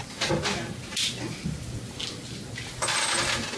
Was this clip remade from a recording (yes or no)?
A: no